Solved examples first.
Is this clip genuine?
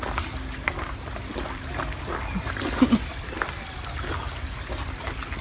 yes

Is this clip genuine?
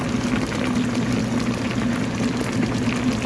no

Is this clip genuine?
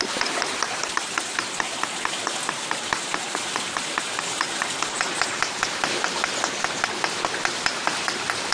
yes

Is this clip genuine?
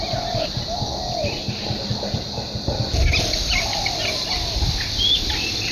no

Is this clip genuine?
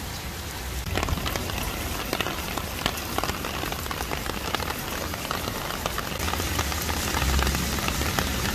yes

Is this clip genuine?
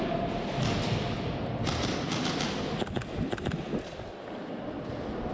yes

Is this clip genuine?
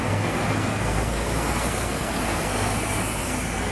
no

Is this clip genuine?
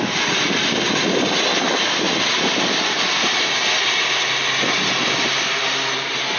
yes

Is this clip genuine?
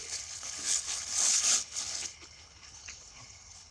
no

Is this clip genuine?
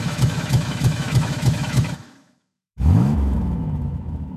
no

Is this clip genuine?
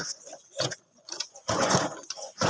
no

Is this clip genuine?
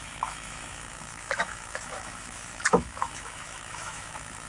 no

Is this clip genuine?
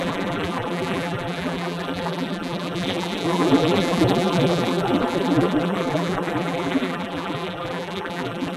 no